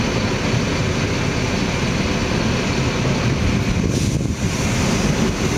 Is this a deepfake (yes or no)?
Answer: no